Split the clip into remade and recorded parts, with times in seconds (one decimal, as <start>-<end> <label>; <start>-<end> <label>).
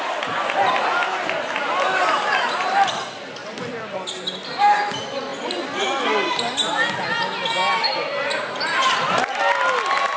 0.0-2.0 recorded; 2.0-2.9 remade; 2.9-10.2 recorded